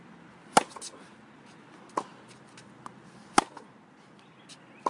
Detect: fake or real real